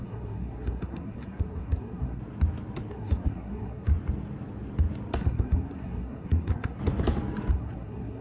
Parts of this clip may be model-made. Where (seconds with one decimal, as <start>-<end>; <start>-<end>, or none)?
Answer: 0.0-2.2; 2.9-3.9; 5.2-6.8; 7.5-8.2